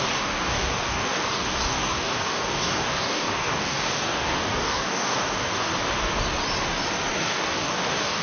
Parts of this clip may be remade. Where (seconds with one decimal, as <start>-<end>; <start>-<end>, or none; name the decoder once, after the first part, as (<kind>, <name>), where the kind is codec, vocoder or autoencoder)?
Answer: 0.0-5.7 (codec, DAC); 7.2-8.2